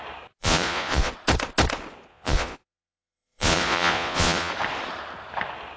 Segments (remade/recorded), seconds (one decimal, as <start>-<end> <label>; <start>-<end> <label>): 0.0-0.4 recorded; 0.4-1.1 remade; 1.1-2.1 recorded; 2.1-4.5 remade; 4.5-5.8 recorded